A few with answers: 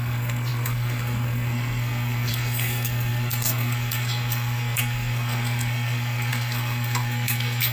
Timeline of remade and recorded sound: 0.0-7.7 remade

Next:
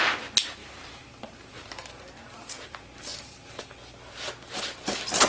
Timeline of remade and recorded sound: 0.0-0.6 recorded; 0.6-3.6 remade; 3.6-5.3 recorded

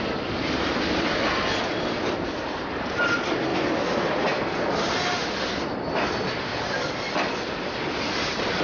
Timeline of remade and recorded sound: 0.0-8.6 recorded